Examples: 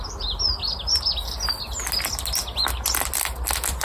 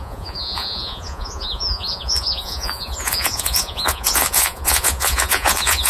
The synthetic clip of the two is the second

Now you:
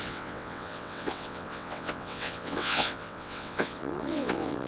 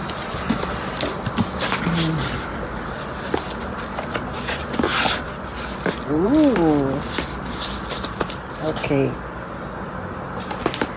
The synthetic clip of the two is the first